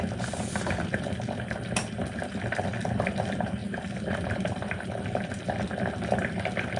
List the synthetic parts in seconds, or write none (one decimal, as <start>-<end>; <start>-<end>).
3.6-4.9